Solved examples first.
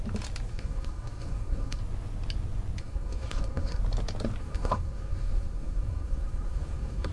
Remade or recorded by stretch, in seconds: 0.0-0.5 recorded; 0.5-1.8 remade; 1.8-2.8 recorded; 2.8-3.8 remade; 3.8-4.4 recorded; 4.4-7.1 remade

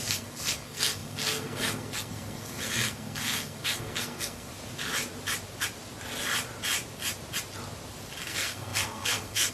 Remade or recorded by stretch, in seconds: 0.0-4.5 remade; 4.5-8.2 recorded; 8.2-9.5 remade

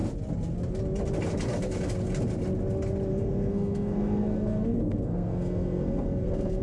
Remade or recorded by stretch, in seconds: 0.0-3.1 recorded; 3.1-6.6 remade